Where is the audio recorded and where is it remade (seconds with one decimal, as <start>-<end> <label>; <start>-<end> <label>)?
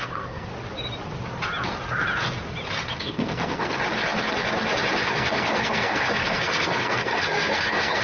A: 0.0-0.5 remade; 0.5-2.9 recorded; 2.9-3.8 remade; 3.8-5.0 recorded; 5.0-8.0 remade